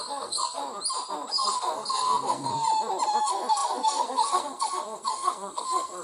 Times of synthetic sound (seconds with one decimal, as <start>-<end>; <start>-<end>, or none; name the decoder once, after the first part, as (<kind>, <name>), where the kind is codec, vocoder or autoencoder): 0.0-0.6 (codec, SNAC); 1.3-2.5; 3.2-6.0

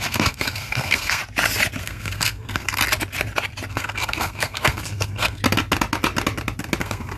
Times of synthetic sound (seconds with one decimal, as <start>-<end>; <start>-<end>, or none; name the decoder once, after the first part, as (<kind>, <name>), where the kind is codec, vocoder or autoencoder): 0.0-1.2 (codec, SNAC); 1.8-2.8; 3.7-5.4; 6.8-7.2

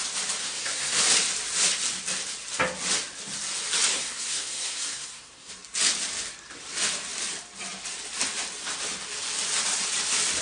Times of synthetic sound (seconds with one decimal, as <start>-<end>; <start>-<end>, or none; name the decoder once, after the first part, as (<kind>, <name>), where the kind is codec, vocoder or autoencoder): 0.4-1.0 (codec, SNAC); 3.9-5.5

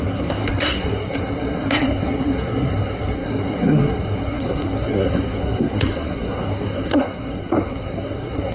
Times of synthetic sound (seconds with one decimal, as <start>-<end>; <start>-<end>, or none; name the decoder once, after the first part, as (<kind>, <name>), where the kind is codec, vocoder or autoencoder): 0.0-8.5 (codec, SNAC)